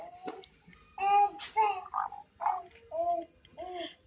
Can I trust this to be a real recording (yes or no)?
yes